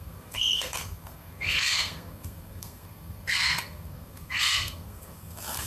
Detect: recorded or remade remade